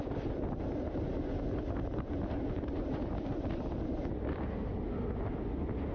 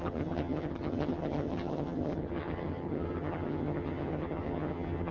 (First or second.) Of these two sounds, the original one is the first